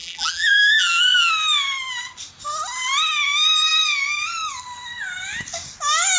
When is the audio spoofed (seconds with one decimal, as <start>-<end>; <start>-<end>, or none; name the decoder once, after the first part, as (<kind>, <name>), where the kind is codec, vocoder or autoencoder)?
0.0-1.3 (vocoder, BigVGAN v2)